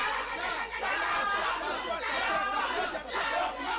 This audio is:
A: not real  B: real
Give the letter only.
A